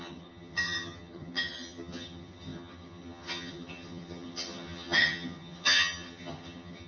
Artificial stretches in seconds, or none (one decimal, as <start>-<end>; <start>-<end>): 0.0-6.9